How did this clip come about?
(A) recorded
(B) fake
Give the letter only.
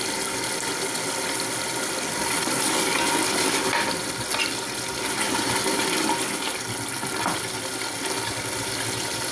A